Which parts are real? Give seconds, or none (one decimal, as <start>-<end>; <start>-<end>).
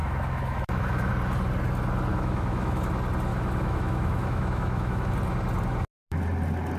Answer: 1.1-2.1; 2.9-3.3; 5.1-6.8